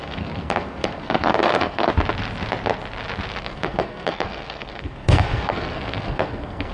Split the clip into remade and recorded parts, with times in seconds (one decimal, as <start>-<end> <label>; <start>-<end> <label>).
0.0-1.9 remade; 1.9-3.4 recorded; 3.4-6.7 remade